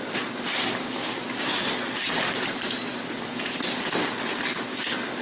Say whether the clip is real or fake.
real